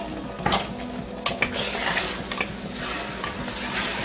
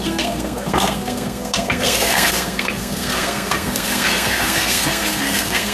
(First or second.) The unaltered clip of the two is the first